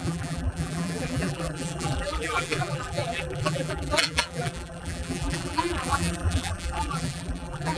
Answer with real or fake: fake